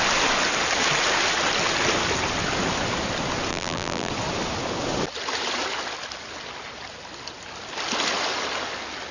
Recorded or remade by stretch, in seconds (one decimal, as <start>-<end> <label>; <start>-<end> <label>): 0.0-3.5 recorded; 3.5-4.1 remade; 4.1-9.1 recorded